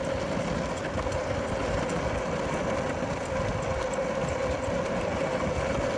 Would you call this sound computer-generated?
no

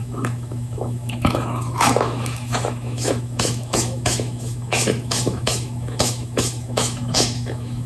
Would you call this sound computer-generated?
yes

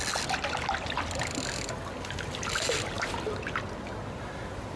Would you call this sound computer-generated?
no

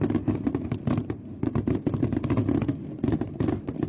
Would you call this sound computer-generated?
no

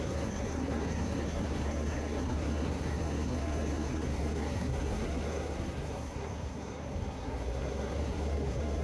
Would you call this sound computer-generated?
yes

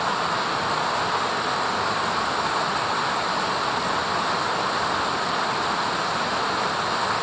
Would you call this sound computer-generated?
no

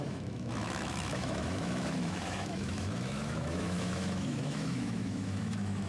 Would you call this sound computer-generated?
yes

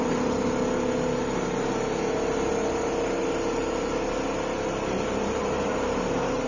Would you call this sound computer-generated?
no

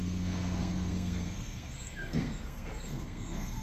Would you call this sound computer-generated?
yes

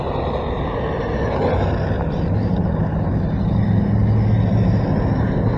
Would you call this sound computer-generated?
no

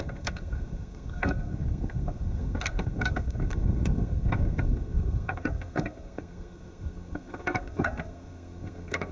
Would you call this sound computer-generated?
yes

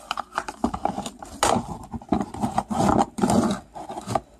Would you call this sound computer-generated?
no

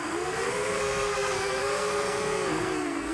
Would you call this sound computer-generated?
yes